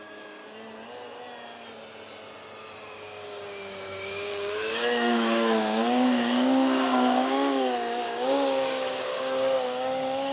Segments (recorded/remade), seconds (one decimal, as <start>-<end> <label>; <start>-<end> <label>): 0.0-0.4 remade; 0.4-2.9 recorded; 2.9-10.3 remade